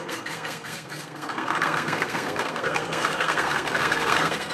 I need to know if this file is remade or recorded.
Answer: remade